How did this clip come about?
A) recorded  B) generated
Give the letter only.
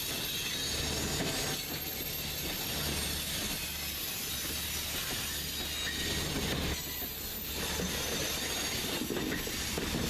A